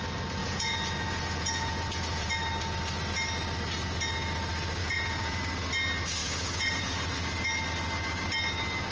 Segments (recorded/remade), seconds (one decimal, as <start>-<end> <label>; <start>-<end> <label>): 0.0-0.4 recorded; 0.4-2.3 remade; 2.3-4.8 recorded; 4.8-5.4 remade; 5.4-6.2 recorded; 6.2-6.8 remade; 6.8-8.9 recorded